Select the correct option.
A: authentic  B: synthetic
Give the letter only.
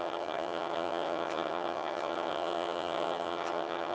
B